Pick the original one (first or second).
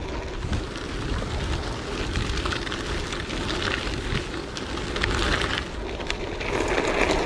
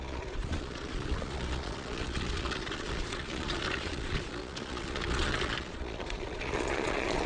first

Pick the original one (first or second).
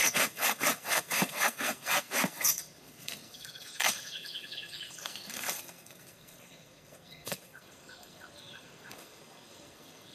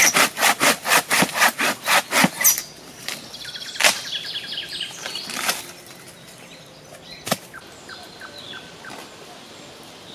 second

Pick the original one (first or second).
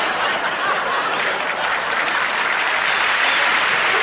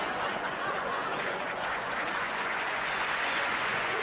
first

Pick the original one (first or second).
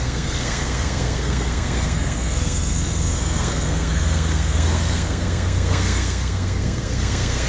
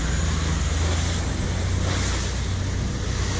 second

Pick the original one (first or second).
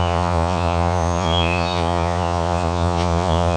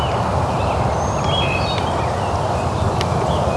second